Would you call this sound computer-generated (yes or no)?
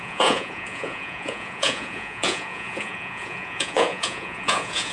yes